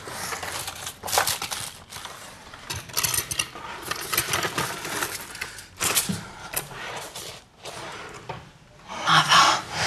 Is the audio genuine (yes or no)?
yes